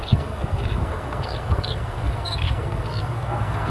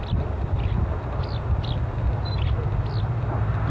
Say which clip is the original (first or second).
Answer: second